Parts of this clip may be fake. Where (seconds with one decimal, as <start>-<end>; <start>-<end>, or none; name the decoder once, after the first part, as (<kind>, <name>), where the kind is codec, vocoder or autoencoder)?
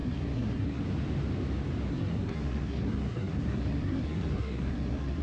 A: 0.0-0.8 (codec, SNAC); 1.9-5.2